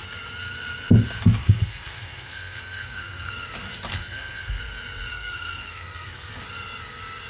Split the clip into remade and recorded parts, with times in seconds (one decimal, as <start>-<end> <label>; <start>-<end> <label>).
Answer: 0.0-1.4 recorded; 1.4-3.3 remade; 3.3-3.9 recorded; 3.9-4.6 remade; 4.6-5.1 recorded; 5.1-6.3 remade; 6.3-7.3 recorded

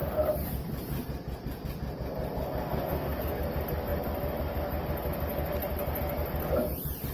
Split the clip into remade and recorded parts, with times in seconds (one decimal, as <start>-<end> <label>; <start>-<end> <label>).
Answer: 0.0-2.9 recorded; 2.9-3.4 remade; 3.4-7.1 recorded

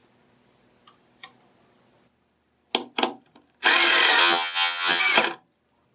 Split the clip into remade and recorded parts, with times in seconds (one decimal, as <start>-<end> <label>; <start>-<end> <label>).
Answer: 0.0-4.2 recorded; 4.2-5.0 remade; 5.0-5.9 recorded

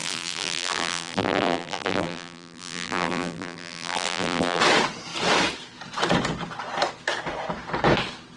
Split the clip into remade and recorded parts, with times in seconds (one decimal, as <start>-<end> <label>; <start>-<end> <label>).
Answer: 0.0-4.6 remade; 4.6-8.4 recorded

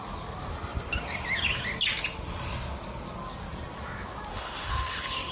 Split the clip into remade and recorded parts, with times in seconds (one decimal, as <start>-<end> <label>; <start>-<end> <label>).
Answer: 0.0-4.3 recorded; 4.3-5.3 remade

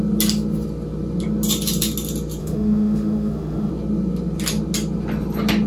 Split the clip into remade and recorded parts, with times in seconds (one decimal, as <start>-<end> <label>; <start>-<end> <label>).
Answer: 0.0-2.4 recorded; 2.4-3.7 remade; 3.7-5.7 recorded

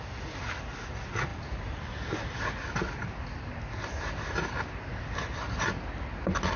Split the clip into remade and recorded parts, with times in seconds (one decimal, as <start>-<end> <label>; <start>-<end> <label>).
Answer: 0.0-6.6 recorded

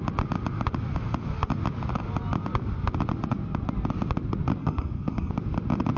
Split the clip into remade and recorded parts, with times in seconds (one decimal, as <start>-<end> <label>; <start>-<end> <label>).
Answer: 0.0-4.6 recorded; 4.6-5.3 remade; 5.3-6.0 recorded